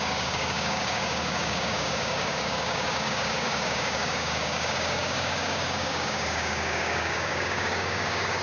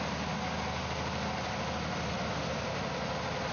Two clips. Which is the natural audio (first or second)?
second